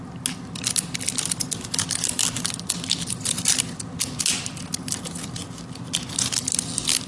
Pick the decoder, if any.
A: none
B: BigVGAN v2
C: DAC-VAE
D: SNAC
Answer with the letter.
A